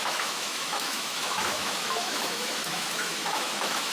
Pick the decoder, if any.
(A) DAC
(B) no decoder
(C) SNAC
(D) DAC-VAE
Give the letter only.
D